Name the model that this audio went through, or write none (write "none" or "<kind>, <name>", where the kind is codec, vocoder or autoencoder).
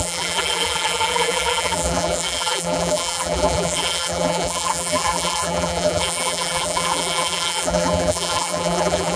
vocoder, BigVGAN v2